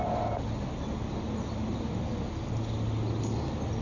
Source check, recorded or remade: recorded